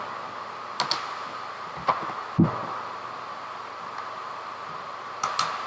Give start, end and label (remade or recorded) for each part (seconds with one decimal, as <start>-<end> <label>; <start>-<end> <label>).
0.0-5.7 recorded